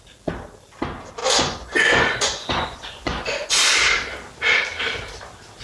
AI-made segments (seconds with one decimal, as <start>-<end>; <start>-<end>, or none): 1.2-3.5